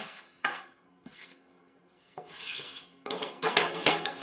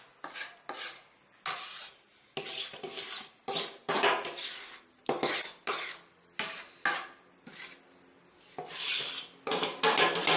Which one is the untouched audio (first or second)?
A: second